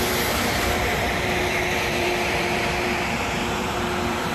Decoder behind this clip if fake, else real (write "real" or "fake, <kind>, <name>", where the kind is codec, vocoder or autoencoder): fake, vocoder, BigVGAN v2